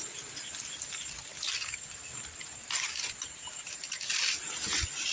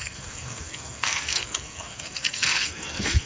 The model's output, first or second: second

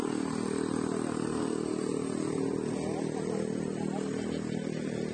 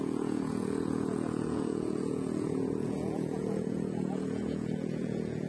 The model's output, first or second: second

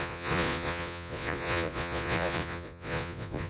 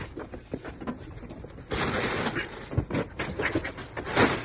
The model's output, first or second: first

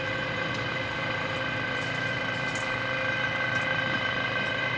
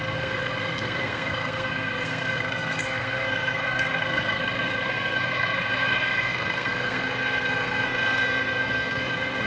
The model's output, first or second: second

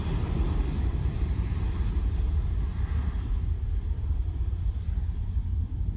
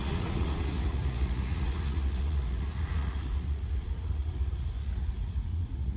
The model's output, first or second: second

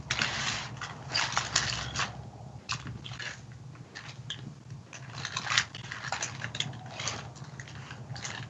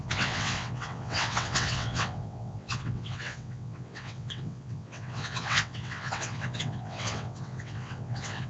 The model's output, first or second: second